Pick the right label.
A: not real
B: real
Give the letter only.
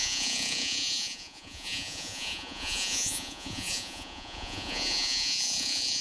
A